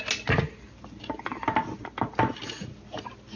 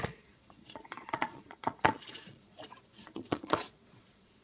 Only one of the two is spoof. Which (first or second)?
second